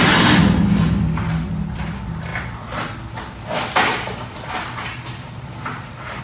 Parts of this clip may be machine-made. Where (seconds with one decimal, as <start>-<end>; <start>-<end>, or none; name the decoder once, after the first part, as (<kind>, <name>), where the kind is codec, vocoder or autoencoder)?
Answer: none